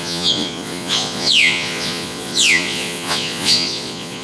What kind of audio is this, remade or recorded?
remade